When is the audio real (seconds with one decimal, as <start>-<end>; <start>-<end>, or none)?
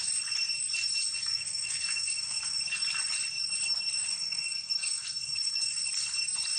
0.0-1.2; 2.6-4.1; 5.6-6.6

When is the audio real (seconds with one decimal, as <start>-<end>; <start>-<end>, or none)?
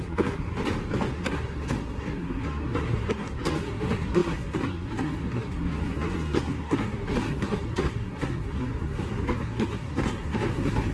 0.5-1.1